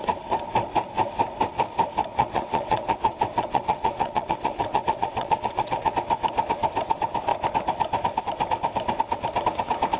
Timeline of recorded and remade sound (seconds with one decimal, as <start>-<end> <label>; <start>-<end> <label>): 0.0-2.1 recorded; 2.1-5.9 remade; 5.9-10.0 recorded